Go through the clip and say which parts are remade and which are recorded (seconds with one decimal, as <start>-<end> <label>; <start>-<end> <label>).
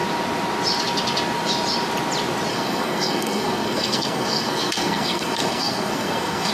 0.0-2.5 recorded; 2.5-6.5 remade